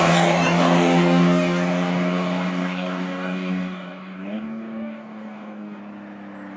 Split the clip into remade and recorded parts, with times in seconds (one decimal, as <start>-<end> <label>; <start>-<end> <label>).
0.0-5.8 remade; 5.8-6.6 recorded